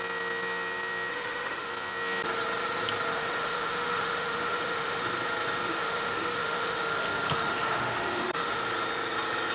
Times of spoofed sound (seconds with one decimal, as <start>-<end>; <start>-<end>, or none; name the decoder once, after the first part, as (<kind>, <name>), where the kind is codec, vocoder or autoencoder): 1.1-1.7 (autoencoder, DAC-VAE); 3.1-5.0; 5.7-8.6